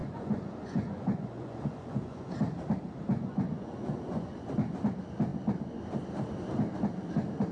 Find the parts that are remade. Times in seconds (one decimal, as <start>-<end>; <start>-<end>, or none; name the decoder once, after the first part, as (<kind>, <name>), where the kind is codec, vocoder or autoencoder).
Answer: 0.0-2.3 (vocoder, Vocos); 3.1-4.5